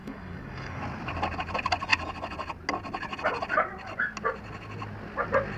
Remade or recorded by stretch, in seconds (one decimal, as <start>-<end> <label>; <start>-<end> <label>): 0.0-0.8 remade; 0.8-5.6 recorded